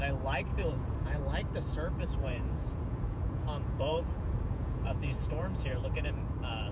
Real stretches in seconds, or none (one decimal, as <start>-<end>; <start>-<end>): 0.0-0.5; 1.2-2.2; 6.2-6.7